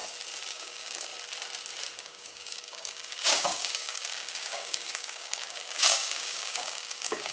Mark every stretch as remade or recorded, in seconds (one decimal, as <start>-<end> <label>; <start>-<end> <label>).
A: 0.0-0.5 recorded; 0.5-1.1 remade; 1.1-2.0 recorded; 2.0-7.3 remade